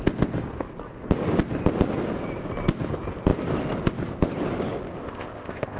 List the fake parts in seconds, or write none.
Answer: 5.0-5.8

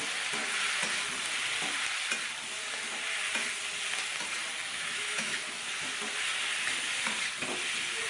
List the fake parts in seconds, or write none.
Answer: 4.7-5.4

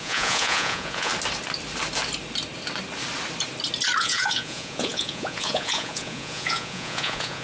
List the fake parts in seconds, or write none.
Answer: 0.0-1.1; 4.0-7.4